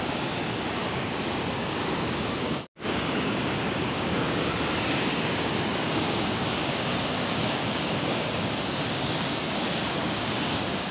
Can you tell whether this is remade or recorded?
remade